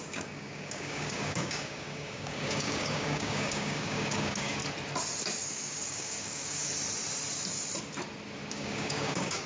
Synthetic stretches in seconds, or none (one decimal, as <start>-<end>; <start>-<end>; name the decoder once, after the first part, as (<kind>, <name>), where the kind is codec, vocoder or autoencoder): 0.0-4.6 (codec, DAC); 5.5-6.7; 8.5-9.5

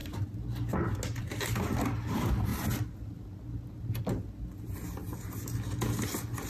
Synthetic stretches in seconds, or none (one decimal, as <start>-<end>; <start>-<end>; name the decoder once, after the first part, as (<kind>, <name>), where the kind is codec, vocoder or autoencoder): none

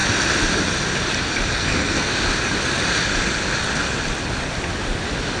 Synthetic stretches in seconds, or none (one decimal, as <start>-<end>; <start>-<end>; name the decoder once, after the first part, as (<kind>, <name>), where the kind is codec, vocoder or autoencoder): 1.5-2.1 (codec, SNAC)

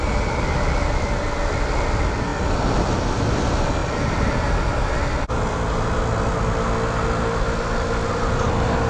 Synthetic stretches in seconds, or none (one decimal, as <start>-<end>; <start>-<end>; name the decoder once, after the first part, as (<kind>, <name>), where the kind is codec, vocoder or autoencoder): none

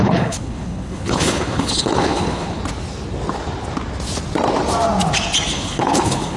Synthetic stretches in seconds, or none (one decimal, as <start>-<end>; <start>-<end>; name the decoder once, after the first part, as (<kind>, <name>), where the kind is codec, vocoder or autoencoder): 0.0-2.6 (codec, HILCodec); 5.5-6.4